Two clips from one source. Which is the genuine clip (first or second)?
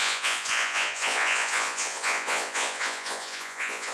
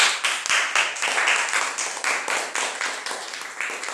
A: second